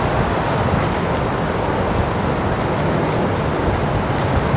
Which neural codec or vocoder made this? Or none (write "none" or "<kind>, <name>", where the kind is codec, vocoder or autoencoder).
none